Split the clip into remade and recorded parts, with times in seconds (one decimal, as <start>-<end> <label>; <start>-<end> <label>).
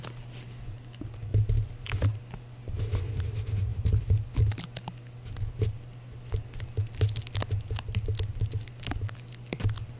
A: 0.0-10.0 recorded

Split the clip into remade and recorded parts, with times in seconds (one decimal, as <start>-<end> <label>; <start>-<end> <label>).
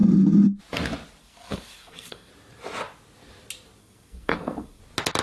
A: 0.0-1.2 recorded; 1.2-2.3 remade; 2.3-3.8 recorded; 3.8-4.8 remade; 4.8-5.2 recorded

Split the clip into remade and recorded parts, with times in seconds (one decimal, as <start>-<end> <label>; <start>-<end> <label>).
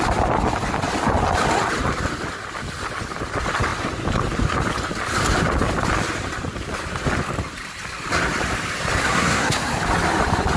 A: 0.0-9.0 recorded; 9.0-9.8 remade; 9.8-10.6 recorded